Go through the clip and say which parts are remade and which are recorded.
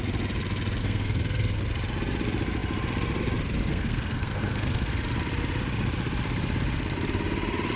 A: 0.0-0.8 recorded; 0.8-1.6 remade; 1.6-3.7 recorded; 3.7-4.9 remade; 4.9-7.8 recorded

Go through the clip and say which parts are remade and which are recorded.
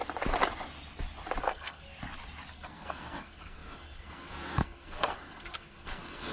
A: 0.0-1.4 recorded; 1.4-1.9 remade; 1.9-2.5 recorded; 2.5-6.3 remade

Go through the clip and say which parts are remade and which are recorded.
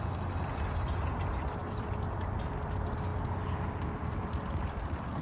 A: 0.0-5.2 recorded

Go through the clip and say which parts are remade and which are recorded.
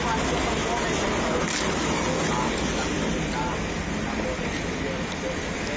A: 0.0-5.8 recorded